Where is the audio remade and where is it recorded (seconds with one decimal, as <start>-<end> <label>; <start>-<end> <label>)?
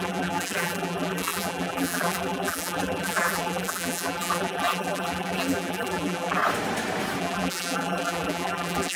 0.0-6.4 remade; 6.4-7.2 recorded; 7.2-9.0 remade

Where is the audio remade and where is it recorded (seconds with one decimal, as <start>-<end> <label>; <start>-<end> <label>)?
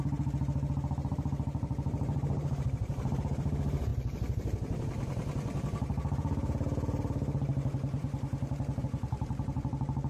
0.0-10.1 remade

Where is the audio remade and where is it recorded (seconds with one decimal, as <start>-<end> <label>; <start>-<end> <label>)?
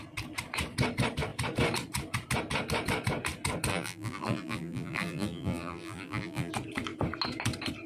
0.0-3.7 recorded; 3.7-6.5 remade; 6.5-7.9 recorded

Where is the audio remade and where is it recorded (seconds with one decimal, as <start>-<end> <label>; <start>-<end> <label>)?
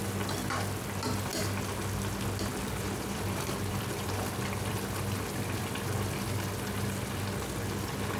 0.0-2.5 recorded; 2.5-7.2 remade; 7.2-8.2 recorded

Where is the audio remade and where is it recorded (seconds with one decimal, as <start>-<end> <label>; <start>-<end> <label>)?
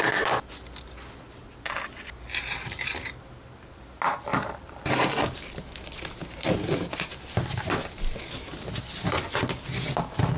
0.0-4.3 recorded; 4.3-5.0 remade; 5.0-6.2 recorded; 6.2-7.1 remade; 7.1-10.4 recorded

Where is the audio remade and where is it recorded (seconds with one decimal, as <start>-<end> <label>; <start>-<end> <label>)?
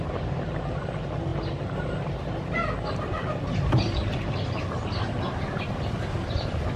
0.0-6.8 recorded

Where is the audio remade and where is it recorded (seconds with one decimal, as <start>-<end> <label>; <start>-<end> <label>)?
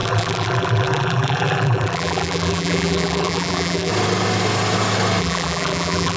0.0-3.9 remade; 3.9-5.2 recorded; 5.2-6.2 remade